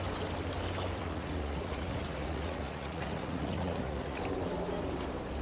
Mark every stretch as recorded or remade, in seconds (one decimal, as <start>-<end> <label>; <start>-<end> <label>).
0.0-1.0 recorded; 1.0-4.2 remade; 4.2-5.4 recorded